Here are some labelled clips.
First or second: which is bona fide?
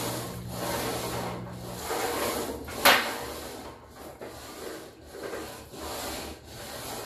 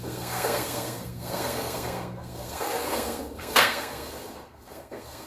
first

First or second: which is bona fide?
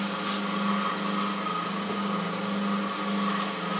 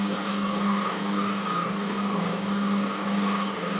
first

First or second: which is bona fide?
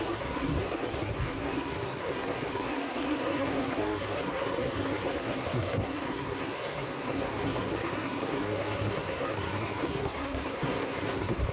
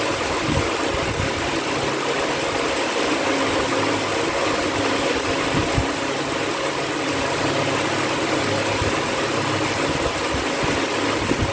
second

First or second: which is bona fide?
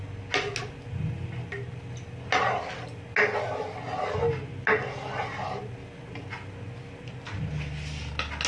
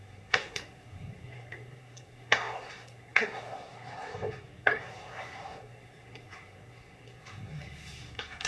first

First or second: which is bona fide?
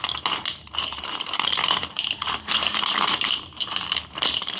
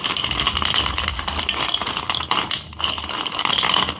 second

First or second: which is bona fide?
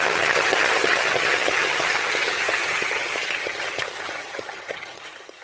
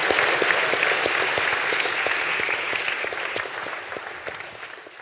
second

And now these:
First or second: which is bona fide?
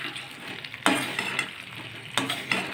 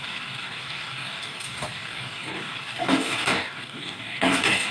first